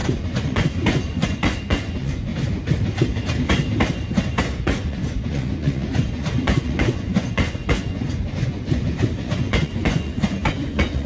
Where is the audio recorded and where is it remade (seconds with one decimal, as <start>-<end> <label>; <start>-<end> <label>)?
0.0-2.3 remade; 2.3-4.4 recorded; 4.4-11.1 remade